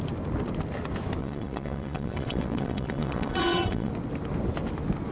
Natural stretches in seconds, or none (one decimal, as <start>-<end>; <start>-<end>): 0.0-1.2; 3.9-5.1